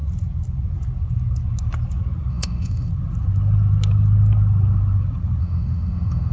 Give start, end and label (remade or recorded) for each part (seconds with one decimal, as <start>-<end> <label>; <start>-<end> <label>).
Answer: 0.0-2.3 recorded; 2.3-2.9 remade; 2.9-5.4 recorded; 5.4-6.3 remade